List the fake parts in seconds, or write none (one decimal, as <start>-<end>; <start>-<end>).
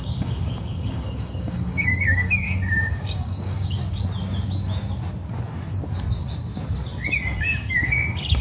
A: 0.0-3.8; 7.4-8.4